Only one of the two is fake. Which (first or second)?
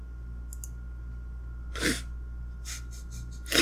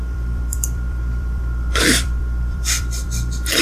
second